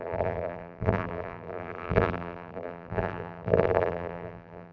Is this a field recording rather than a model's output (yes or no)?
no